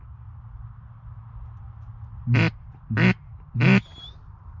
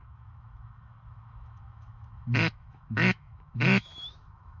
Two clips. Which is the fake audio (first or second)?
second